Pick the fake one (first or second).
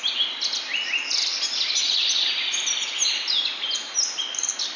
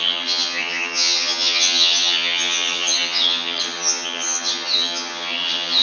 second